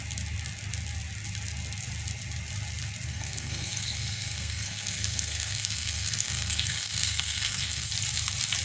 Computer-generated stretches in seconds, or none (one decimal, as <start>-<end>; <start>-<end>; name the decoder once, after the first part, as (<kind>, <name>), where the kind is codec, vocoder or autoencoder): 3.1-7.9 (codec, SNAC)